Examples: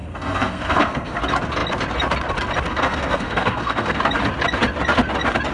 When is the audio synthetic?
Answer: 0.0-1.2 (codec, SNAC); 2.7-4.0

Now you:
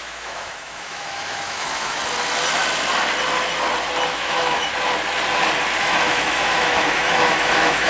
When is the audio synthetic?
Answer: 0.0-2.0 (autoencoder, DAC-VAE); 4.1-4.7; 5.8-7.9

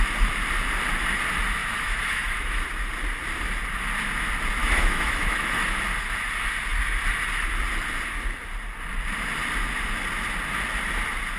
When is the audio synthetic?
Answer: 1.6-2.6 (autoencoder, DAC-VAE); 4.6-5.8

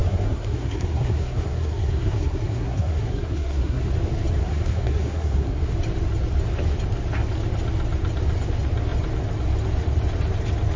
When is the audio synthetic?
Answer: 0.0-3.8 (codec, SNAC); 4.4-5.7

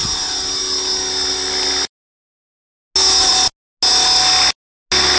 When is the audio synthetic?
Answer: none

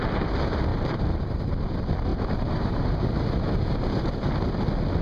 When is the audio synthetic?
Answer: 0.7-1.7 (vocoder, BigVGAN v2); 2.1-4.5

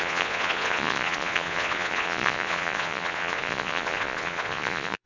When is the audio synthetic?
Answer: 0.0-5.1 (vocoder, Vocos)

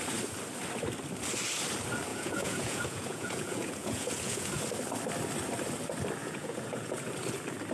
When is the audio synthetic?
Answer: 2.1-4.6 (vocoder, Vocos); 6.2-7.1